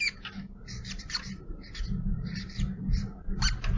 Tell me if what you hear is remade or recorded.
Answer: recorded